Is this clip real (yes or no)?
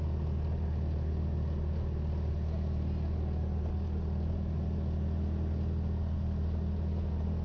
yes